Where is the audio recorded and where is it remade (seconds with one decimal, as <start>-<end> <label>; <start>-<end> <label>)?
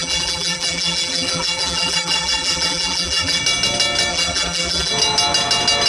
0.0-3.4 remade; 3.4-4.1 recorded; 4.1-4.9 remade; 4.9-5.9 recorded